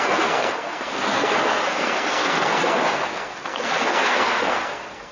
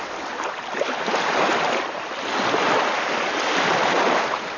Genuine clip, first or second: second